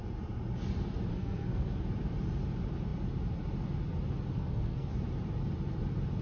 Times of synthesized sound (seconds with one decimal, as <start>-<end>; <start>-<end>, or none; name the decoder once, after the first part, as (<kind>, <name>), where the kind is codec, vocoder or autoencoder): 1.1-1.8 (codec, SNAC); 4.3-4.9

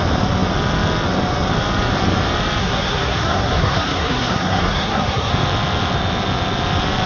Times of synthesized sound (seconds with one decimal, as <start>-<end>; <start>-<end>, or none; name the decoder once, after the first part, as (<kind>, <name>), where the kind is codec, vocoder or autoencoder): 2.6-5.3 (codec, SNAC)

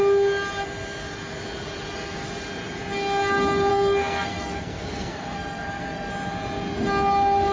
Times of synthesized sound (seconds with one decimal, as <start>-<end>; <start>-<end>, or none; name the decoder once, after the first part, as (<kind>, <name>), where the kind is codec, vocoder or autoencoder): 3.7-6.1 (codec, SNAC)

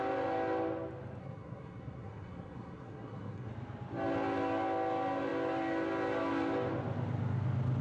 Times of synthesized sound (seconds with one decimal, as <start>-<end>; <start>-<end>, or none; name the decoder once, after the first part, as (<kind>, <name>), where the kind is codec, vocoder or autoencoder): 1.2-3.5 (codec, SNAC)

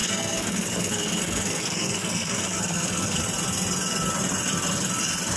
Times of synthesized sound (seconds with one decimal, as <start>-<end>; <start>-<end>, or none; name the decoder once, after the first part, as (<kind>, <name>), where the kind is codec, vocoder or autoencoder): 0.0-3.2 (codec, SNAC)

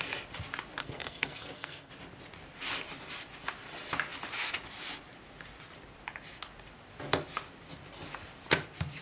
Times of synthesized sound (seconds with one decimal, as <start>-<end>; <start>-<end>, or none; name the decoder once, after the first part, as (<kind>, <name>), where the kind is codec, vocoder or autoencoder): 0.8-1.9 (codec, SNAC)